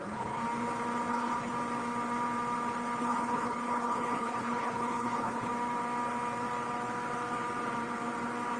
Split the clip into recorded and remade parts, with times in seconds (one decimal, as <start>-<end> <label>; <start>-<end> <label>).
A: 0.0-0.4 remade; 0.4-1.1 recorded; 1.1-1.5 remade; 1.5-3.0 recorded; 3.0-5.5 remade; 5.5-8.6 recorded